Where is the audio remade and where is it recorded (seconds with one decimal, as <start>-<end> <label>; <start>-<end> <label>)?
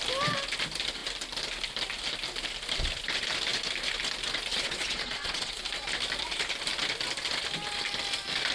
0.0-4.5 recorded; 4.5-5.5 remade; 5.5-8.5 recorded